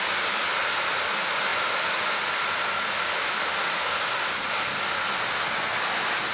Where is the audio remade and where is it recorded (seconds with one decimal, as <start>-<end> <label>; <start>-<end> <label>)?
0.0-6.3 recorded